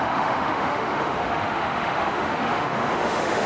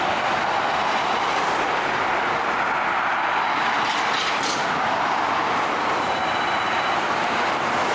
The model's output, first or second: first